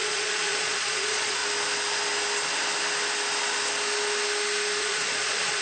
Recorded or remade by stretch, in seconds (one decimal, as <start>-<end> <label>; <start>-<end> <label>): 0.0-1.4 remade; 1.4-4.8 recorded; 4.8-5.6 remade